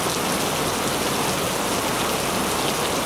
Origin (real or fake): real